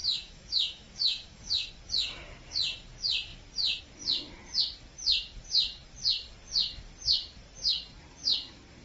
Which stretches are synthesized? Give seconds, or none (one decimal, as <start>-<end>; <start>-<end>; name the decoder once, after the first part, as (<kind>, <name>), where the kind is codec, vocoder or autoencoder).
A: 0.0-1.7 (autoencoder, DAC-VAE)